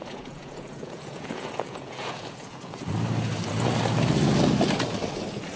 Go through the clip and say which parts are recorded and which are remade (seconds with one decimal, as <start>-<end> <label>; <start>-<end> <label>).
0.0-2.9 remade; 2.9-5.6 recorded